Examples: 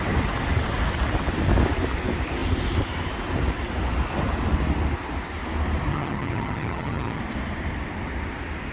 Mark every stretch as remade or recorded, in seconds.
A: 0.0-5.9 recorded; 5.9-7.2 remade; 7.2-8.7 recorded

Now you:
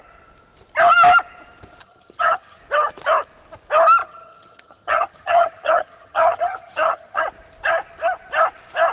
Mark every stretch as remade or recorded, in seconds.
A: 0.0-1.8 recorded; 1.8-2.6 remade; 2.6-4.0 recorded; 4.0-7.2 remade; 7.2-8.9 recorded

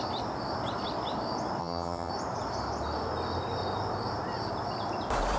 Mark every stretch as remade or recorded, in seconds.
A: 0.0-1.6 recorded; 1.6-2.1 remade; 2.1-5.4 recorded

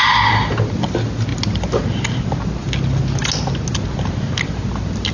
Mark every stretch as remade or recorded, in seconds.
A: 0.0-5.1 recorded